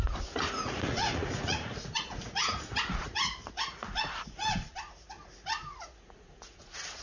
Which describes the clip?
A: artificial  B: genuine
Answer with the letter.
A